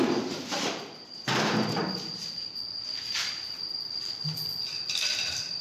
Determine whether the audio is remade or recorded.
remade